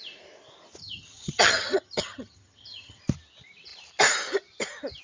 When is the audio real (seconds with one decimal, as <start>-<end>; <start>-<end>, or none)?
0.0-0.8; 3.0-5.0